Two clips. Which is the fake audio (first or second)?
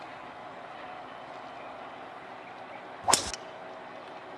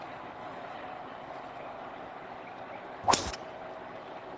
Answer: second